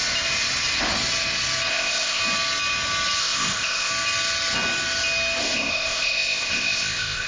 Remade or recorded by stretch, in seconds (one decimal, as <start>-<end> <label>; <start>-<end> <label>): 0.0-1.7 recorded; 1.7-2.2 remade; 2.2-3.2 recorded; 3.2-3.9 remade; 3.9-5.4 recorded; 5.4-7.3 remade